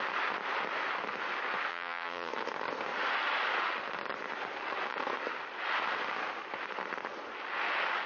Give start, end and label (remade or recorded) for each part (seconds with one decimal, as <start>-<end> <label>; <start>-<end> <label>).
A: 0.0-1.7 recorded; 1.7-2.3 remade; 2.3-8.1 recorded